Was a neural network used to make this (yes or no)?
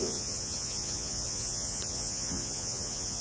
yes